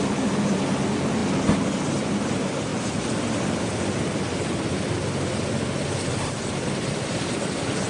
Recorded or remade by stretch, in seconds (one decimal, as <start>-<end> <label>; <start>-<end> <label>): 0.0-2.7 recorded; 2.7-7.4 remade; 7.4-7.9 recorded